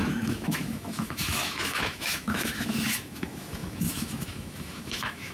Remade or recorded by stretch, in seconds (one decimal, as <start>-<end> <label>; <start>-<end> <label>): 0.0-5.3 remade